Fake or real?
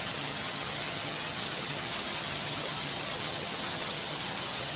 fake